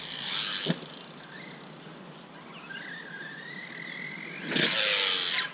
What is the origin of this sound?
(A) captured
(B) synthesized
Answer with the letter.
A